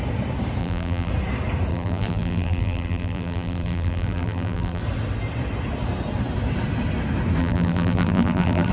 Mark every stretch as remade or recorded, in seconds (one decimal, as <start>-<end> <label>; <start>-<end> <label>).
0.0-0.6 recorded; 0.6-1.1 remade; 1.1-1.7 recorded; 1.7-4.8 remade; 4.8-7.4 recorded; 7.4-8.7 remade